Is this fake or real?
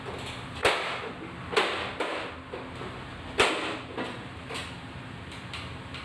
real